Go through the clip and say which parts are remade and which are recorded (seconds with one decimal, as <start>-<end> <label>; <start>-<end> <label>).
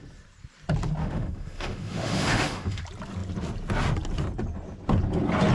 0.0-1.0 recorded; 1.0-2.8 remade; 2.8-5.5 recorded